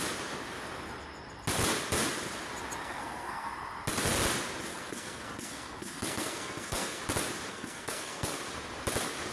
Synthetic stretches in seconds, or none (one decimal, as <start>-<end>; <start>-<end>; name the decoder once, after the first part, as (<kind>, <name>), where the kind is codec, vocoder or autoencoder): 2.8-3.5 (codec, SNAC); 4.7-7.0; 7.5-8.4